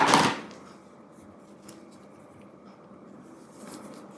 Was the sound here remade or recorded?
recorded